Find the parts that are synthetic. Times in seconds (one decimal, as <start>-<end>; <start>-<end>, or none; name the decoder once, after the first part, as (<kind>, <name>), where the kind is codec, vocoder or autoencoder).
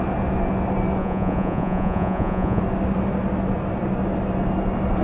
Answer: 1.0-2.6 (vocoder, Vocos)